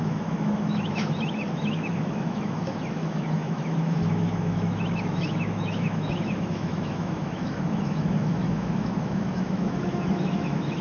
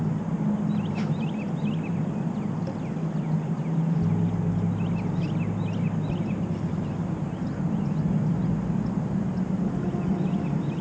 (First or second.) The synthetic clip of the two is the first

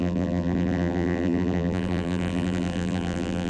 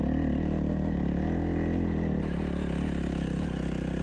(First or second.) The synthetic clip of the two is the first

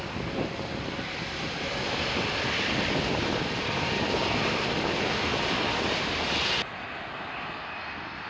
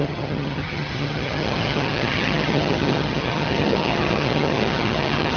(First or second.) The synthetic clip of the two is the second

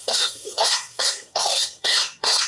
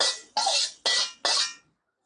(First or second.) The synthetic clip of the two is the first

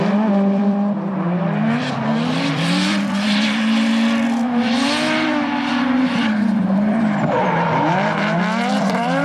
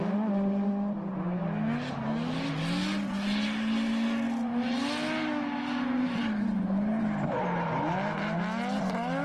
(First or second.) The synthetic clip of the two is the first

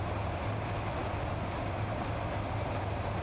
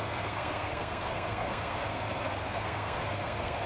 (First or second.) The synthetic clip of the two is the second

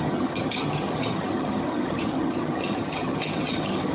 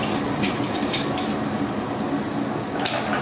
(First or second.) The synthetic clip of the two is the first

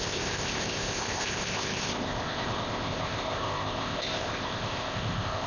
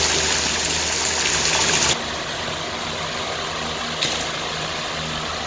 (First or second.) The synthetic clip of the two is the first